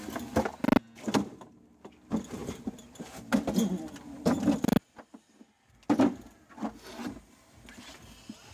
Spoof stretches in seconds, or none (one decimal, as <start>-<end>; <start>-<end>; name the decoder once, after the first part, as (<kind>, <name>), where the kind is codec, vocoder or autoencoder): none